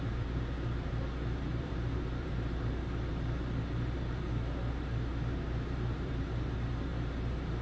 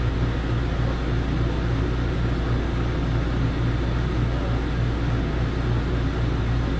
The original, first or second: second